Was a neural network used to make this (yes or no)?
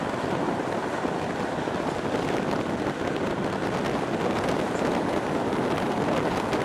no